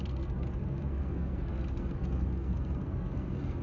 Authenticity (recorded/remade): remade